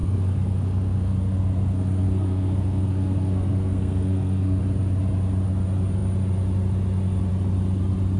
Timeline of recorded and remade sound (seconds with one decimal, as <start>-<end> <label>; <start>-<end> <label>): 0.0-4.6 remade; 4.6-8.2 recorded

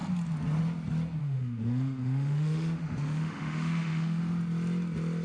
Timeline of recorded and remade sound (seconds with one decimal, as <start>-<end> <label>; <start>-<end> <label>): 0.0-1.2 recorded; 1.2-4.2 remade; 4.2-5.2 recorded

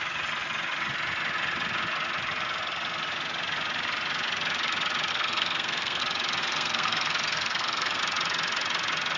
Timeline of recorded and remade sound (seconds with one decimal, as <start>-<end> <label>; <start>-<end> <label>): 0.0-5.1 recorded; 5.1-6.0 remade; 6.0-6.4 recorded; 6.4-8.0 remade; 8.0-9.2 recorded

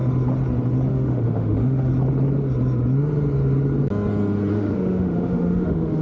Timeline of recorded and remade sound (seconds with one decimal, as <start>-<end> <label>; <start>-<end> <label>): 0.0-0.9 recorded; 0.9-1.9 remade; 1.9-4.5 recorded; 4.5-6.0 remade